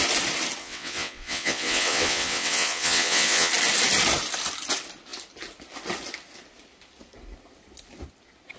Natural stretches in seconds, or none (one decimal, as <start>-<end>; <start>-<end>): 0.0-0.6; 3.5-8.6